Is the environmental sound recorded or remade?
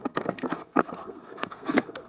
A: remade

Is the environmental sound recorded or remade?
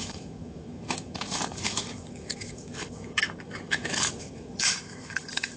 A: remade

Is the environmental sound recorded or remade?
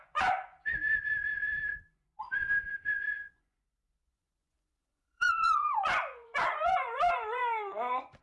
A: remade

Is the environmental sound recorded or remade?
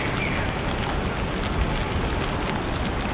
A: recorded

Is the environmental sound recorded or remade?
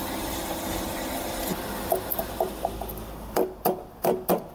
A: recorded